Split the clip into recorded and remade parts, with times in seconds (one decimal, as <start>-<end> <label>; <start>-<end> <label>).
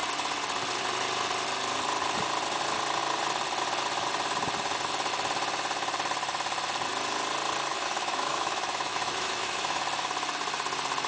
0.0-7.7 recorded; 7.7-9.8 remade; 9.8-11.1 recorded